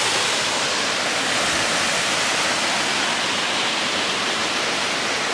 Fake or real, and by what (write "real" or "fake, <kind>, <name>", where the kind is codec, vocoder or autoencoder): real